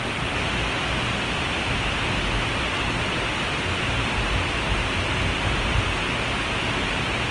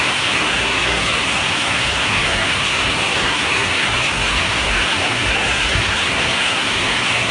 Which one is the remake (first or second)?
second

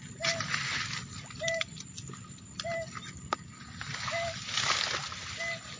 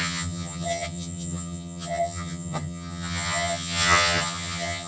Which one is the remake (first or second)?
second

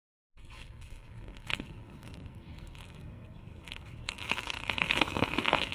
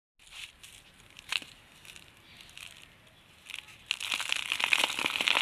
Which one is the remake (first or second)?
first